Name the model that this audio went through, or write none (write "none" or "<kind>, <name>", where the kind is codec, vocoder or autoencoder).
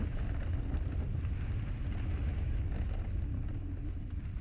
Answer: none